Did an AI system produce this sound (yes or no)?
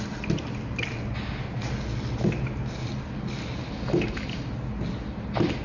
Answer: no